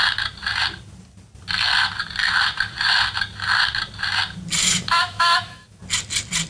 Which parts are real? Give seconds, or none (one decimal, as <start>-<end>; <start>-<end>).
0.0-4.6; 5.8-6.5